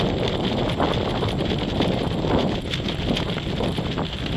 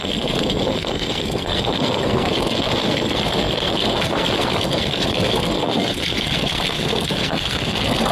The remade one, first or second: second